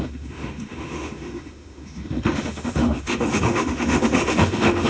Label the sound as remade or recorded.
remade